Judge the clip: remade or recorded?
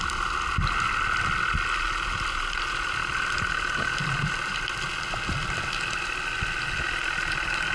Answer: recorded